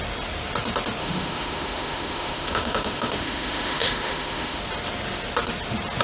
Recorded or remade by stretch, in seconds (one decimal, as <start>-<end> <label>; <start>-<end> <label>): 0.0-1.0 recorded; 1.0-4.6 remade; 4.6-6.0 recorded